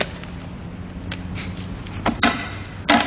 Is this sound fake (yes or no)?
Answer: no